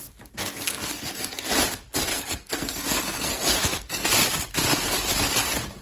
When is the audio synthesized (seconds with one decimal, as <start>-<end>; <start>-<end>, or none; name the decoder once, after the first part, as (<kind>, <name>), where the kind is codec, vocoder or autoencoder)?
0.4-1.5 (codec, SNAC); 2.1-4.1